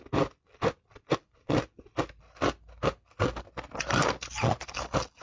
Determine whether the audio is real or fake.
real